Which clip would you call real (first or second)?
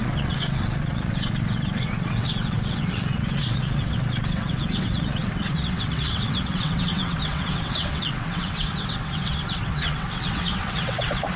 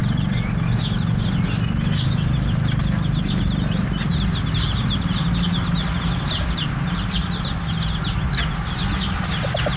second